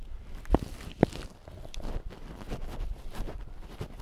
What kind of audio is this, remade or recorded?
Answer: remade